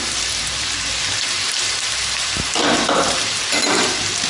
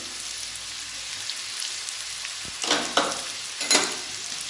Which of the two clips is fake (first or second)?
first